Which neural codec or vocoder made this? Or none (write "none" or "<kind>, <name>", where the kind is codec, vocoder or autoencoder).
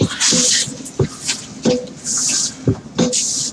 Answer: none